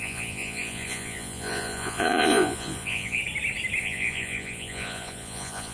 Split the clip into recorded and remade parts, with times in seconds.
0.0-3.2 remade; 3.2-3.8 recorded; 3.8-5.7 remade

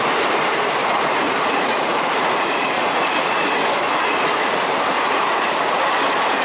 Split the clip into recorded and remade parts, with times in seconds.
0.0-0.8 recorded; 0.8-3.5 remade; 3.5-4.9 recorded; 4.9-5.8 remade; 5.8-6.4 recorded

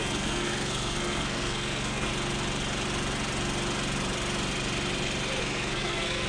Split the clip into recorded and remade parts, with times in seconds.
0.0-2.1 remade; 2.1-5.4 recorded; 5.4-6.3 remade

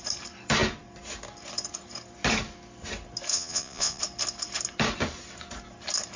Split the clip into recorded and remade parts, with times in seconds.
0.0-3.3 recorded; 3.3-4.0 remade; 4.0-6.2 recorded

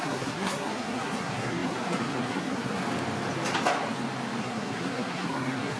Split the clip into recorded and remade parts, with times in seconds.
0.0-2.8 remade; 2.8-4.4 recorded; 4.4-5.8 remade

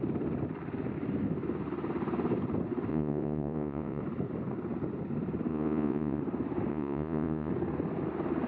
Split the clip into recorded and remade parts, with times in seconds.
0.0-2.9 recorded; 2.9-4.0 remade; 4.0-5.5 recorded; 5.5-6.2 remade; 6.2-6.7 recorded; 6.7-7.5 remade; 7.5-8.5 recorded